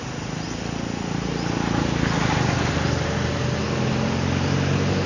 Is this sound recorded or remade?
recorded